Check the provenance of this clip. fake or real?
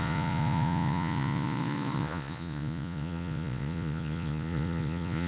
fake